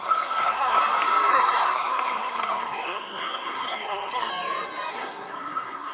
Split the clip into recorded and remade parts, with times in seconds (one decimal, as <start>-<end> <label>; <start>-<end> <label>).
0.0-0.8 remade; 0.8-1.3 recorded; 1.3-4.3 remade; 4.3-4.9 recorded; 4.9-5.9 remade